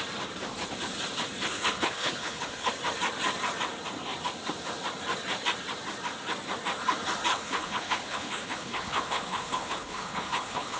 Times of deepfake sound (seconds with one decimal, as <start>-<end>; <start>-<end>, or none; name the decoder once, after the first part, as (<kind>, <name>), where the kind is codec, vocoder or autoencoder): 1.5-2.7 (codec, HILCodec); 7.3-10.8